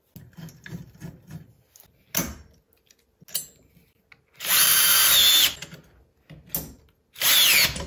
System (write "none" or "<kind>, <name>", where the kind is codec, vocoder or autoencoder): none